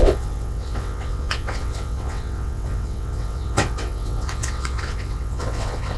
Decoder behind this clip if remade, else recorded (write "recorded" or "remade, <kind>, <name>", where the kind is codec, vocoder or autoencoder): remade, vocoder, WaveNeXt